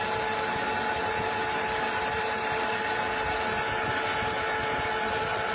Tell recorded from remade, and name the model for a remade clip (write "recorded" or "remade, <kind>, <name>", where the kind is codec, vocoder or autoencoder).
recorded